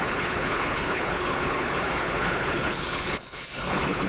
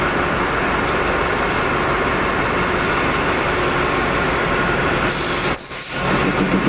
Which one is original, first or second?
second